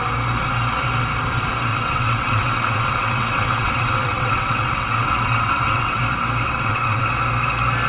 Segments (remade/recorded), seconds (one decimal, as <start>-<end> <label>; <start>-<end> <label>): 0.0-1.7 recorded; 1.7-6.0 remade; 6.0-6.4 recorded; 6.4-7.1 remade; 7.1-7.9 recorded